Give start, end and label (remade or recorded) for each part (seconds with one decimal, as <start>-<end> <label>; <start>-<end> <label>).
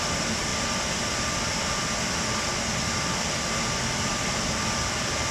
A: 0.0-5.3 remade